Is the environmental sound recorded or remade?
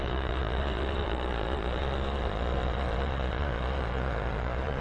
remade